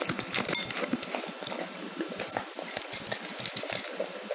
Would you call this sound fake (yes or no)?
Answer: no